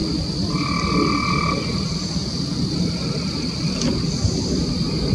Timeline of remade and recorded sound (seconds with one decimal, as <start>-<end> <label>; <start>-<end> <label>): 0.0-5.1 recorded